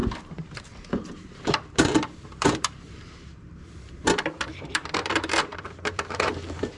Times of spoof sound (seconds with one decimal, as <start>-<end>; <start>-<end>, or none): 0.0-4.1; 4.5-6.8